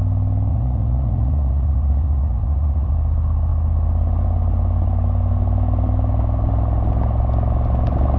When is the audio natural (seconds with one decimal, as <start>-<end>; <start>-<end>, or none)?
0.0-0.5; 2.9-8.2